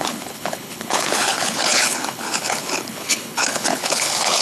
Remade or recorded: remade